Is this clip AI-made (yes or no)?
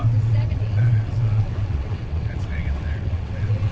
yes